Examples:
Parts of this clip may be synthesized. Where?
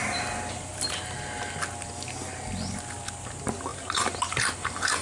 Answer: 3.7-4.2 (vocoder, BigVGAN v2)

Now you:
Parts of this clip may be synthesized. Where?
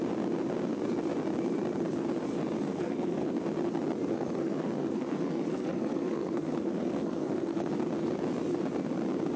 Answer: 2.7-3.3 (codec, SNAC); 4.1-7.7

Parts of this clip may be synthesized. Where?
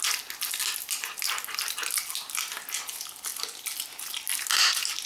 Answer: 3.3-4.1 (vocoder, BigVGAN v2)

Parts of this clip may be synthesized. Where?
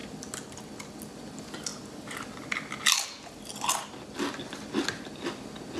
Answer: none